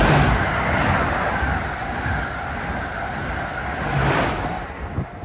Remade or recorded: recorded